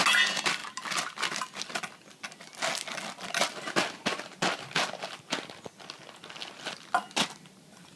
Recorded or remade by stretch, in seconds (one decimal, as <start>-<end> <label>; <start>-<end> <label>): 0.0-8.0 recorded